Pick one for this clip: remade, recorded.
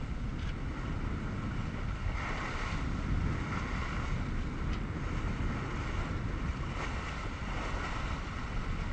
recorded